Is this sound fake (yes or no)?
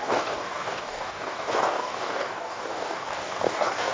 yes